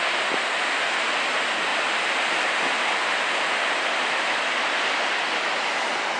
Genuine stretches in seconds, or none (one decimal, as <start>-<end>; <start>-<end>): 0.0-6.2